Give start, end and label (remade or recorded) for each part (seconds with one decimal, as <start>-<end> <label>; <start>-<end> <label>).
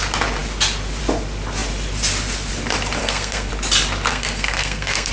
0.0-3.0 recorded; 3.0-3.5 remade; 3.5-4.1 recorded; 4.1-5.1 remade